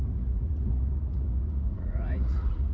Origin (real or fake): fake